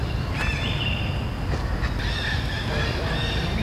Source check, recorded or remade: recorded